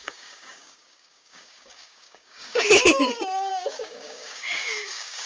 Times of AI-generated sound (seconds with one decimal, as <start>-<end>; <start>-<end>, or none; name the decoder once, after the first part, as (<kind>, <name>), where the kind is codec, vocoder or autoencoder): 0.0-5.3 (codec, DAC)